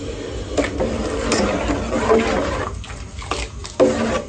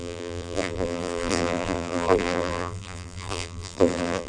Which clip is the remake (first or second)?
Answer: second